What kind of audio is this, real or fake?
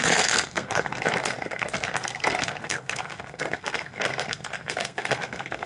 fake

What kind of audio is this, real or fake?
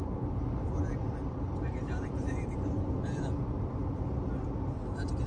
real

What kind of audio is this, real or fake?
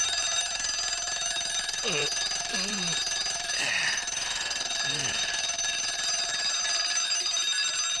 fake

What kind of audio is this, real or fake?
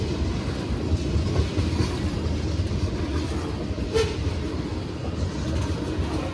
real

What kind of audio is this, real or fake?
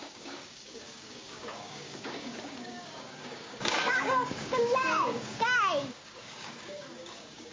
fake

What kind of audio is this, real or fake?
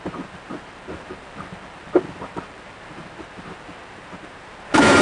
fake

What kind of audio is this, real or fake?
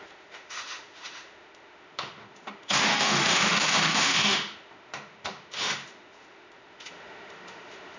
fake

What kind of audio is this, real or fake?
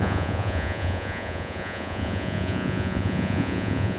fake